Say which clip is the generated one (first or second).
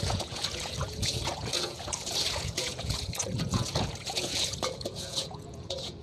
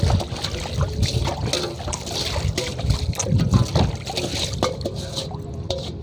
first